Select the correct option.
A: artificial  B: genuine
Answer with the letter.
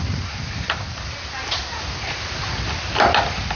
B